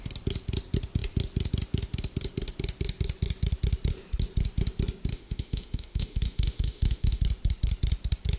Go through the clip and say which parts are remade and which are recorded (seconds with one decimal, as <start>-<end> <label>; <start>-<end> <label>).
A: 0.0-5.1 recorded; 5.1-7.2 remade; 7.2-8.4 recorded